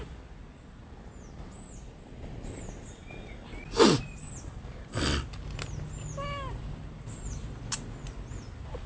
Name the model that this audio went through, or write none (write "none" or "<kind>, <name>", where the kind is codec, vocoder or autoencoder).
none